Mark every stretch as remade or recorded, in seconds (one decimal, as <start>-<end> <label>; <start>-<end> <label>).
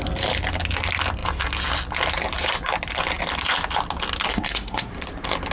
0.0-4.3 recorded; 4.3-4.9 remade; 4.9-5.5 recorded